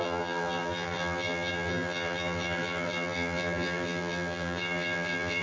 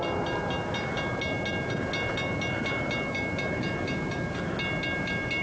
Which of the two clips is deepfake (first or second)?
first